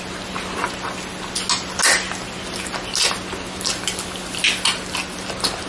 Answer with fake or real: real